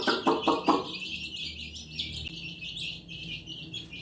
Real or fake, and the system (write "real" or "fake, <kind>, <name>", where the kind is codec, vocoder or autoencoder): real